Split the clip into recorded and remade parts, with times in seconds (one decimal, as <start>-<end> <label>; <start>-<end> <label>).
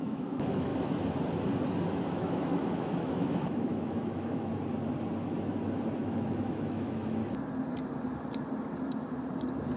0.0-0.7 remade; 0.7-1.9 recorded; 1.9-4.5 remade; 4.5-6.0 recorded; 6.0-7.2 remade; 7.2-9.8 recorded